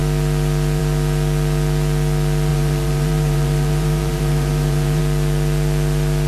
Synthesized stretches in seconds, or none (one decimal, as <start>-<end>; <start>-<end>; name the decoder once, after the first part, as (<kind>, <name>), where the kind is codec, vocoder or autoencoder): 2.5-5.0 (vocoder, BigVGAN v2)